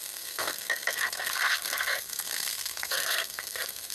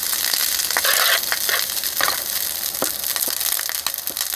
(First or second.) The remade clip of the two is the first